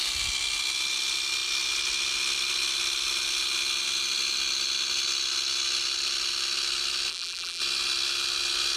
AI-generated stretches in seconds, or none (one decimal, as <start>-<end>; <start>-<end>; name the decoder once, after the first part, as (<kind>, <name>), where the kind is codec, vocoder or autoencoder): 7.1-7.6 (vocoder, BigVGAN v2)